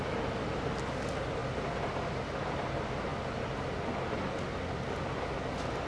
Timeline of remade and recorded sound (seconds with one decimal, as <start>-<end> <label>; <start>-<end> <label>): 0.0-5.9 recorded